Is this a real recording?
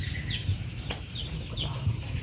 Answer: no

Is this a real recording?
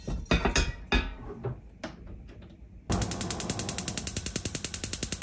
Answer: yes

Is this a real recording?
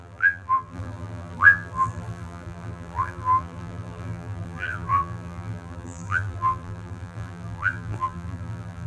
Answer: no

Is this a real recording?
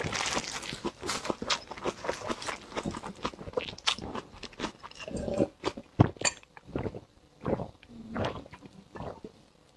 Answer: yes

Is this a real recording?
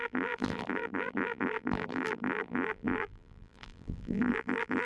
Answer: no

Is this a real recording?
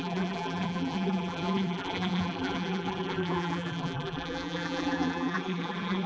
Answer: no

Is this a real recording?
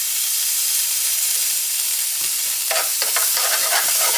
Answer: no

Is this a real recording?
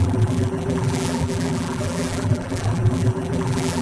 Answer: no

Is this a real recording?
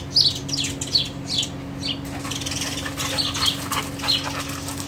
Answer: yes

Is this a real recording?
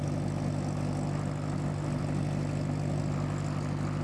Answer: yes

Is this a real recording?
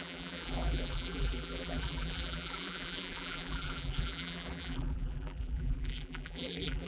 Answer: no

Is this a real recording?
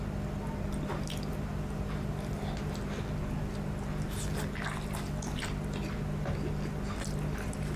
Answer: yes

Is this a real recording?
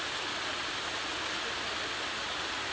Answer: yes